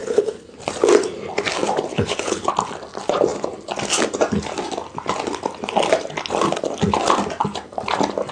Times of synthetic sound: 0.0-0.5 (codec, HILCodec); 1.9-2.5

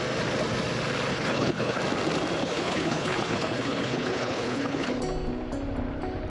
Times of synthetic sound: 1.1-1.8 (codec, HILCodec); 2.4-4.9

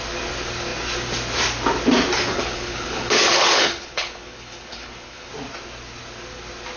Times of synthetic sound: 2.3-5.3 (codec, HILCodec)

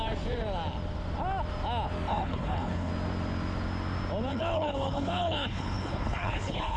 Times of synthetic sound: 2.1-2.9 (codec, HILCodec); 4.3-6.8

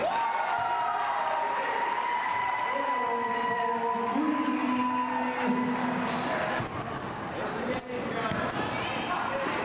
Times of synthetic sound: none

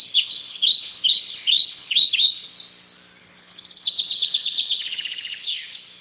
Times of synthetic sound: 0.0-2.5 (codec, HILCodec); 3.2-6.0